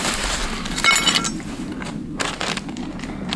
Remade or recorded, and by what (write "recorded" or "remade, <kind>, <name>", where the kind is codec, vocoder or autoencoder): recorded